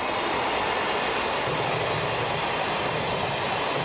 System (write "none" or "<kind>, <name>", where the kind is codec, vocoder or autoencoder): none